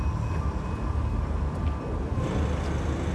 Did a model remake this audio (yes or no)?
no